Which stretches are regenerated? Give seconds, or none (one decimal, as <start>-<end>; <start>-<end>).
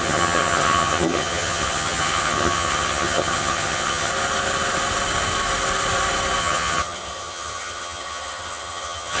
0.0-4.1; 6.4-9.2